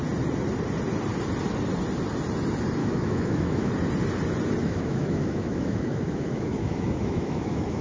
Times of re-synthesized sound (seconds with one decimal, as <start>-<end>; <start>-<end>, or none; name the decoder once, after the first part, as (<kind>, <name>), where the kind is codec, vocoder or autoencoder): 2.8-3.7 (autoencoder, DAC-VAE); 4.6-7.8